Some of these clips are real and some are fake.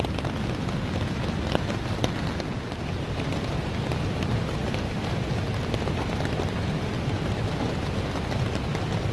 real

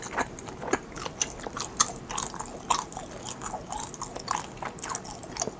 real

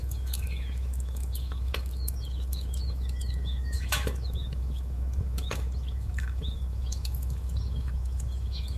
fake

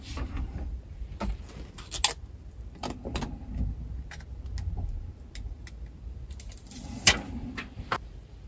real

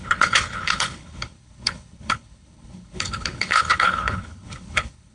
fake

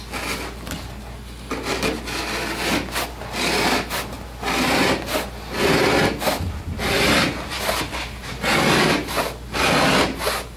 real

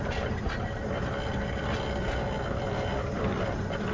real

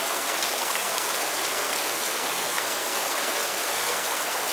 fake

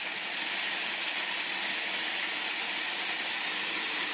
real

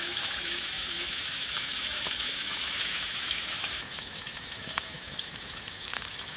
fake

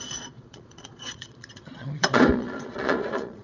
fake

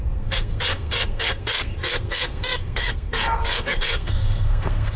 fake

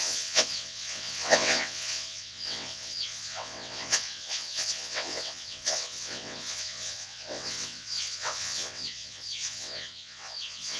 fake